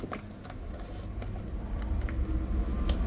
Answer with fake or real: real